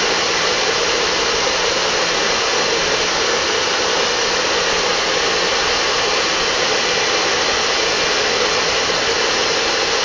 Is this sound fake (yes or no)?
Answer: no